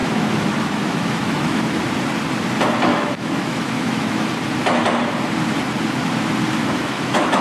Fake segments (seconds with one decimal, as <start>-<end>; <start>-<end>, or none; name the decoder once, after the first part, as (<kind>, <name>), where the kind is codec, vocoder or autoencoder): 0.0-1.8 (autoencoder, DAC-VAE); 2.9-4.3; 6.6-7.4